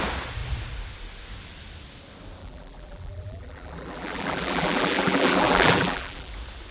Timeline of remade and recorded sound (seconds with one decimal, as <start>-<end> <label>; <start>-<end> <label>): 0.0-2.4 recorded; 2.4-6.3 remade; 6.3-6.7 recorded